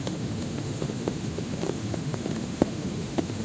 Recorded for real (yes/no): no